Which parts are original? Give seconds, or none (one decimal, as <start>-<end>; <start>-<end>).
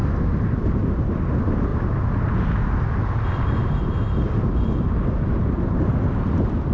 0.0-0.5; 1.7-5.7